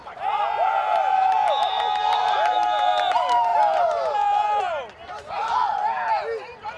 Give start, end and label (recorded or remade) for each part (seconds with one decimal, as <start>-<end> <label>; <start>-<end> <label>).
0.0-6.8 recorded